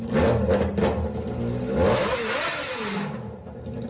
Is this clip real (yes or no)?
yes